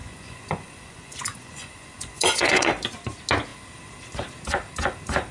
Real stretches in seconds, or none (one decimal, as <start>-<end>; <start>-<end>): 2.7-5.3